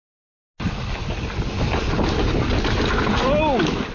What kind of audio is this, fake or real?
real